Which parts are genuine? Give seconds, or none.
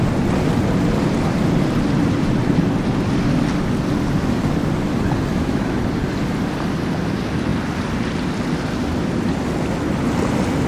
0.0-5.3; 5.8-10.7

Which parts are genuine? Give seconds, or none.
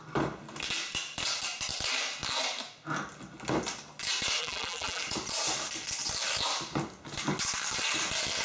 0.0-4.4; 5.0-8.4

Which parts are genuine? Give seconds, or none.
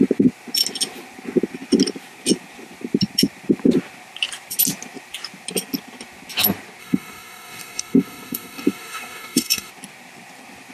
0.0-6.8; 9.7-10.7